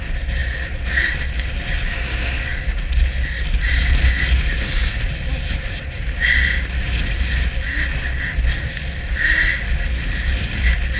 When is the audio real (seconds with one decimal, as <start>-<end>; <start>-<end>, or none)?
0.0-11.0